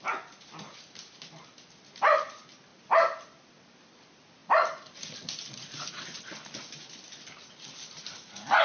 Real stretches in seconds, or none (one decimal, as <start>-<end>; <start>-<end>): 0.0-8.6